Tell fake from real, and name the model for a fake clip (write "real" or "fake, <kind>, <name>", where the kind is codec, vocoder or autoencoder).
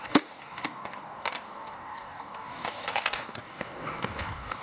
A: fake, codec, DAC